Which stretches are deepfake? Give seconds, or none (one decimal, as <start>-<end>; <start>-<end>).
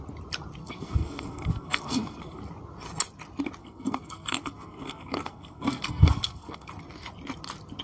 0.6-2.4; 3.6-6.7